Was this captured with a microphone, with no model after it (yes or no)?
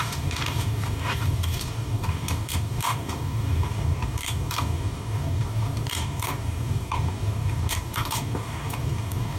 no